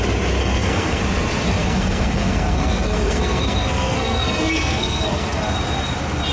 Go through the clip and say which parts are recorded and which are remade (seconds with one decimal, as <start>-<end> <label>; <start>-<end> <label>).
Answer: 0.0-0.4 recorded; 0.4-1.0 remade; 1.0-1.6 recorded; 1.6-5.4 remade; 5.4-6.3 recorded